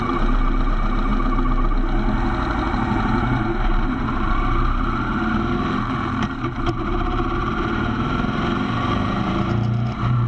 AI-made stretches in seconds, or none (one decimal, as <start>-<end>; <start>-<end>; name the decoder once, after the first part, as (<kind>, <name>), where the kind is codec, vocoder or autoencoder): 0.0-1.1 (vocoder, BigVGAN v2); 2.7-10.3